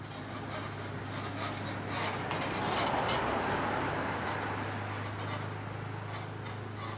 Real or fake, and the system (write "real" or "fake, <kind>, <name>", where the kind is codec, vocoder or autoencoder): real